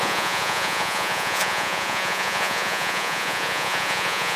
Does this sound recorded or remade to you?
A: remade